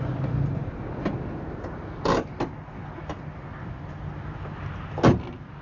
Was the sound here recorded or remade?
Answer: recorded